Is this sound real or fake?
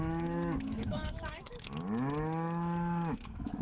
fake